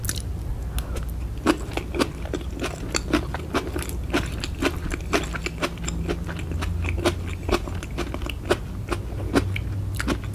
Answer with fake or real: real